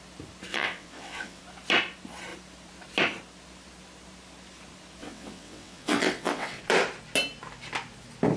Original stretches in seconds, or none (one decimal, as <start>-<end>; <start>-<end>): 0.0-0.5; 1.4-5.0; 6.6-8.4